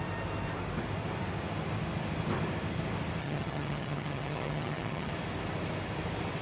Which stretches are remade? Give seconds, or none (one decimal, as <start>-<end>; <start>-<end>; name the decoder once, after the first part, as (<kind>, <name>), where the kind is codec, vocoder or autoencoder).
3.2-5.1 (vocoder, HiFi-GAN)